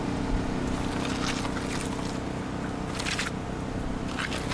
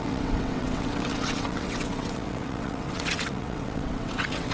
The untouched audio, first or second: first